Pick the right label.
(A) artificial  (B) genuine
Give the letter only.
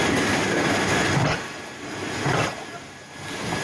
B